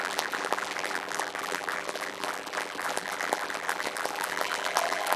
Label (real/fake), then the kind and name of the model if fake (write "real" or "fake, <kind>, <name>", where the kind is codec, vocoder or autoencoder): fake, vocoder, BigVGAN v2